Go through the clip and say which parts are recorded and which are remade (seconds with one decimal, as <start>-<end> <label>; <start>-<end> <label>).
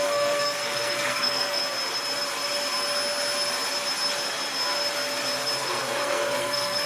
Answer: 0.0-1.6 remade; 1.6-5.7 recorded; 5.7-6.9 remade